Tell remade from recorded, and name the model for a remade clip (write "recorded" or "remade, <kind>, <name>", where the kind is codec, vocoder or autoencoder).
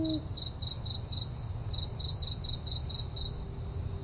recorded